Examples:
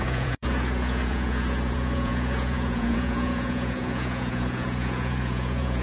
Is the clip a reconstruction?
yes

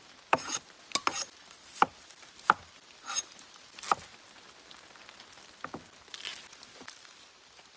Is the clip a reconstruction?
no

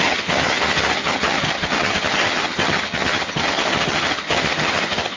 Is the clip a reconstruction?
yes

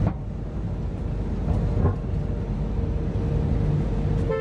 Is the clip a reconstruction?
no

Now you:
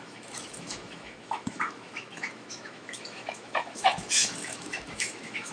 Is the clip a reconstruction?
yes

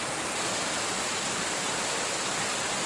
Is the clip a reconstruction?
no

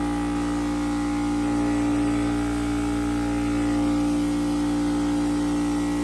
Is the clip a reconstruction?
no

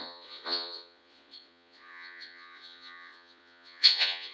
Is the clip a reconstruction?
yes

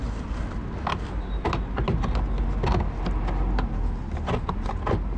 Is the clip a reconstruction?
no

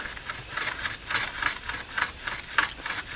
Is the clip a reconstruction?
yes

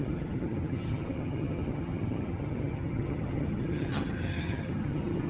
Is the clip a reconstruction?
yes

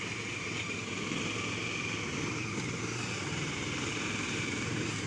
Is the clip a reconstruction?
yes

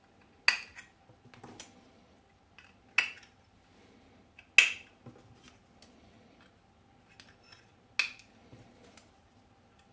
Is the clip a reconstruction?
no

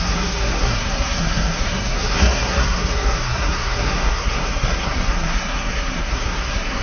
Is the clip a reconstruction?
yes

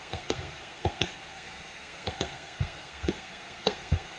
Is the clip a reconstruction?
yes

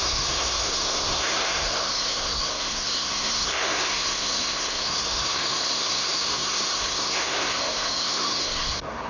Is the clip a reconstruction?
yes